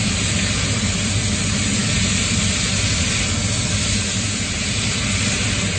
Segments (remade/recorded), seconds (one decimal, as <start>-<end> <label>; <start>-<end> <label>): 0.0-3.4 recorded; 3.4-4.7 remade; 4.7-5.8 recorded